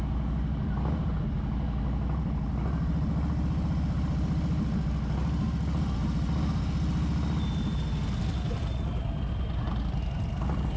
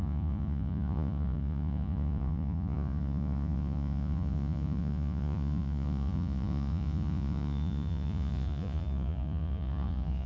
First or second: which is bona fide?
first